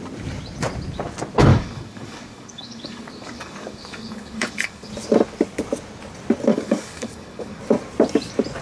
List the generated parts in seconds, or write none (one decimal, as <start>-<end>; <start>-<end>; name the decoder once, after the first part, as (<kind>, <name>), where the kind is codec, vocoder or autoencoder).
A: 1.5-4.9 (codec, DAC); 6.5-7.6

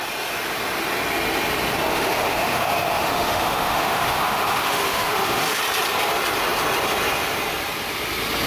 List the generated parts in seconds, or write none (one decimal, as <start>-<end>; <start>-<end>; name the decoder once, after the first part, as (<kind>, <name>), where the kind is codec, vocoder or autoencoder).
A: 1.9-5.6 (autoencoder, DAC-VAE)

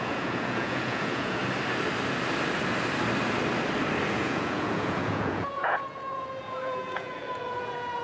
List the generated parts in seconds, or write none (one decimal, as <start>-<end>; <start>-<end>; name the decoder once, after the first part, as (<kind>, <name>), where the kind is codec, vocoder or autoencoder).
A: 0.0-1.4 (vocoder, Vocos); 4.1-8.0

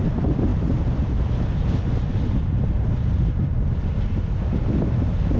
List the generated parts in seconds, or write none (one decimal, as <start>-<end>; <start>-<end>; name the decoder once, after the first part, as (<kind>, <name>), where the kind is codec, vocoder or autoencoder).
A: 0.5-3.7 (vocoder, BigVGAN v2)

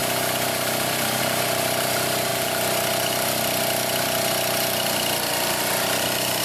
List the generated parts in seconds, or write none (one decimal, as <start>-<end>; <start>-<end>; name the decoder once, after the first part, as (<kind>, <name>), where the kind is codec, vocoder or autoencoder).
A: 0.0-1.2 (vocoder, BigVGAN v2)